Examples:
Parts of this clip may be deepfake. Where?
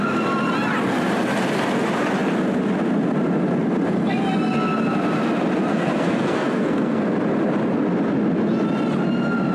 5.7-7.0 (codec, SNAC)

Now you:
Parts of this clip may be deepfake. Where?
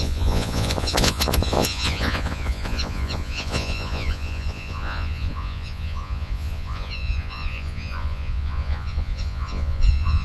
0.0-10.2 (vocoder, Vocos)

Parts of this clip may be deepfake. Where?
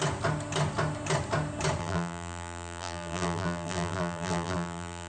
1.8-5.1 (vocoder, BigVGAN v2)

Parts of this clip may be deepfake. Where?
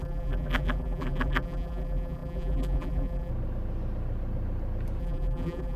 0.0-3.3 (vocoder, BigVGAN v2); 5.0-5.8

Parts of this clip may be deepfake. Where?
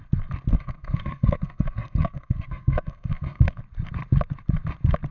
0.5-3.6 (codec, SNAC)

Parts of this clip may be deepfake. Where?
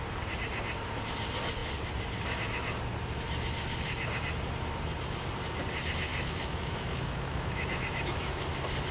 6.1-8.4 (autoencoder, DAC-VAE)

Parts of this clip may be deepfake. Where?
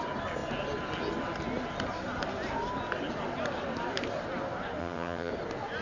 4.8-5.3 (vocoder, HiFi-GAN)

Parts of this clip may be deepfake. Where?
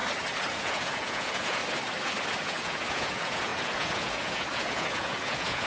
0.6-1.6 (vocoder, Vocos); 2.4-5.7